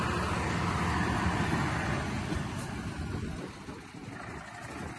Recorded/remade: recorded